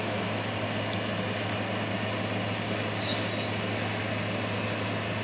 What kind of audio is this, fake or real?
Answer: real